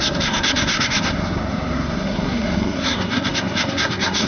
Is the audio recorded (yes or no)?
no